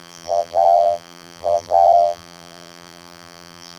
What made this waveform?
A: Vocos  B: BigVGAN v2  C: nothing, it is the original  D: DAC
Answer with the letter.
B